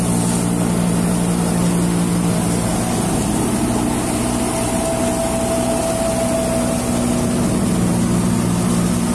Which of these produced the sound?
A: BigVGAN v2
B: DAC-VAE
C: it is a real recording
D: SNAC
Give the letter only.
C